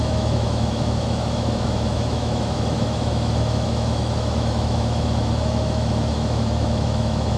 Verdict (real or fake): fake